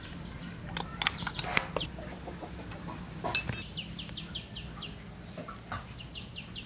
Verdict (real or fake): real